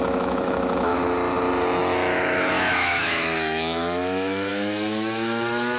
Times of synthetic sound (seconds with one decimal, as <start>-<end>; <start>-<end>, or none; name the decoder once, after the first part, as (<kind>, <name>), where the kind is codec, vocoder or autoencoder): 0.0-0.9 (autoencoder, DAC-VAE); 1.8-5.8